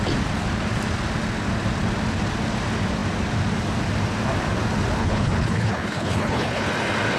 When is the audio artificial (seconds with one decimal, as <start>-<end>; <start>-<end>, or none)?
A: 5.0-6.7